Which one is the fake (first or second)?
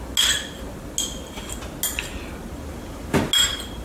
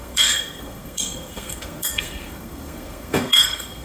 second